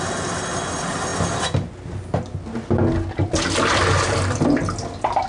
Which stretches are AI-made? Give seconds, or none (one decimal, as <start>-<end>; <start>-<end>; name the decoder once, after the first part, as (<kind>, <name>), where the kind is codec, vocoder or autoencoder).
none

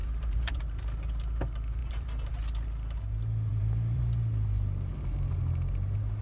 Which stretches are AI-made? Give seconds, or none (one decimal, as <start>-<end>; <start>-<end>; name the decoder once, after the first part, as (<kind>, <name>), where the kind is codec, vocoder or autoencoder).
0.0-0.6 (vocoder, BigVGAN v2); 1.8-2.3; 3.5-4.0; 4.9-5.4

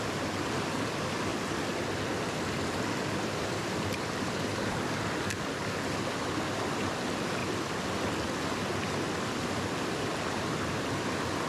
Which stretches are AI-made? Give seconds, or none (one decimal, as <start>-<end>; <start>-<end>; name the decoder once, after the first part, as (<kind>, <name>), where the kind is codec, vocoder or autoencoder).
none

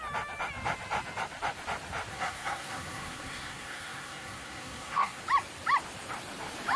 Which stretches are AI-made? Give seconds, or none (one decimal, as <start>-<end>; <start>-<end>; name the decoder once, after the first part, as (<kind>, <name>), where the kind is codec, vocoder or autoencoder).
2.1-5.2 (codec, SNAC)

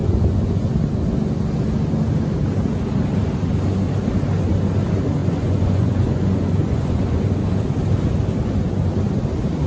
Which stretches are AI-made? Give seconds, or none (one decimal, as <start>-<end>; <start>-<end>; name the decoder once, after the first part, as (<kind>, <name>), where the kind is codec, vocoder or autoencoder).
0.0-0.7 (vocoder, Vocos); 5.2-7.2